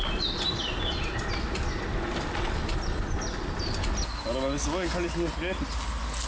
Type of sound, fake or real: real